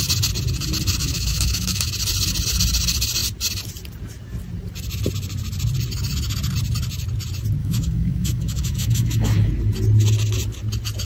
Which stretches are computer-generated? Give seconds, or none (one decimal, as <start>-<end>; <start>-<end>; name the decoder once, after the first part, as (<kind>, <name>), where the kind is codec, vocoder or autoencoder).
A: 1.0-1.9 (autoencoder, DAC-VAE); 7.6-9.5